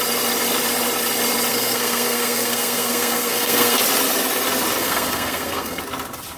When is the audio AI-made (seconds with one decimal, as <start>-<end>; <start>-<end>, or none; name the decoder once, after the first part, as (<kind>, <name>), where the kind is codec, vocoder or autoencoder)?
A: 1.5-3.8 (codec, SNAC); 4.8-5.8